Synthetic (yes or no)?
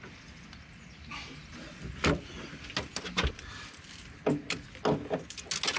no